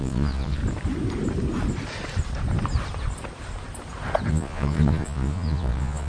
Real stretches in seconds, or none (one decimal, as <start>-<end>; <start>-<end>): 0.6-4.3